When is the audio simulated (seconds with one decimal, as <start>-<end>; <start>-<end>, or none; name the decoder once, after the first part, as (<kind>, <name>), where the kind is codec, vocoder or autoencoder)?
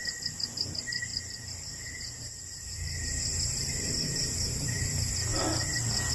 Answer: 1.1-4.8 (vocoder, BigVGAN v2)